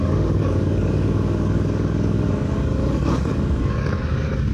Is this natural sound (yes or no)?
no